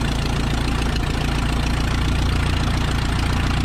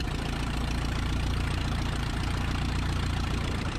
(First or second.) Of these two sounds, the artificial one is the second